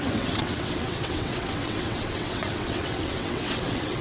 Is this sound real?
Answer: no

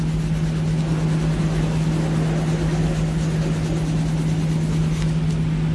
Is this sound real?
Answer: yes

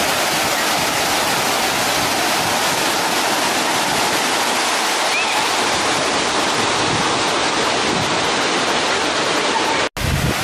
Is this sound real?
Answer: yes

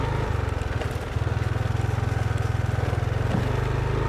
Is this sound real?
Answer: yes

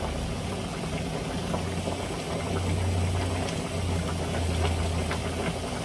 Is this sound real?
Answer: yes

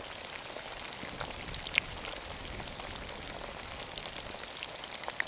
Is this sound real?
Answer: yes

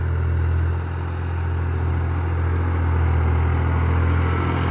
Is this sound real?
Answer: yes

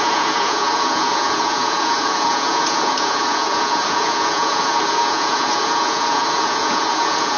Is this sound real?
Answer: no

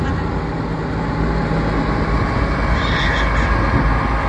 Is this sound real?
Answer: yes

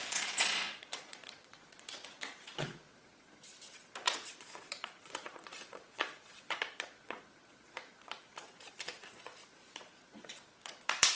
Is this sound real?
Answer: no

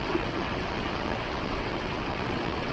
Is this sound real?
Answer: no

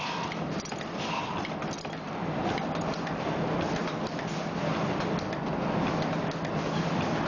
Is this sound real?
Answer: yes